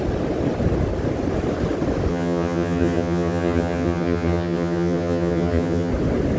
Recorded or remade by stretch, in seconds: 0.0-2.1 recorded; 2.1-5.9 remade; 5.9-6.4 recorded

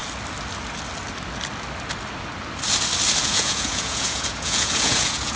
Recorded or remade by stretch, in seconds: 0.0-3.2 recorded; 3.2-5.4 remade

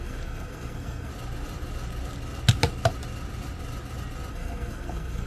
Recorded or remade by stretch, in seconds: 0.0-1.1 remade; 1.1-4.3 recorded; 4.3-5.3 remade

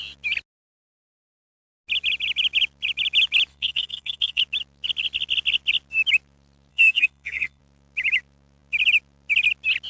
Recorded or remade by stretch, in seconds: 0.0-3.5 recorded; 3.5-4.4 remade; 4.4-6.7 recorded; 6.7-7.6 remade; 7.6-9.9 recorded

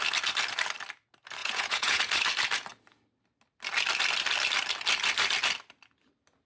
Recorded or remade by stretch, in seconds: 0.0-1.4 recorded; 1.4-2.0 remade; 2.0-6.5 recorded

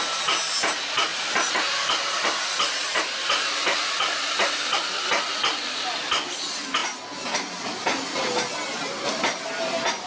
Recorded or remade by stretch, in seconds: 0.0-10.1 recorded

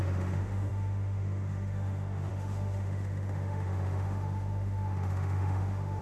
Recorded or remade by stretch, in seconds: 0.0-6.0 remade